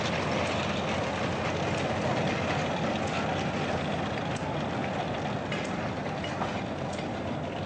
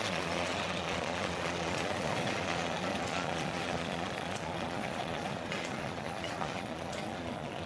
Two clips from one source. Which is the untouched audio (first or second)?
first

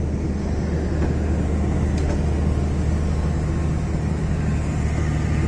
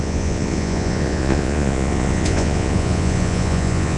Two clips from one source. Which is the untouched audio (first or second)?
first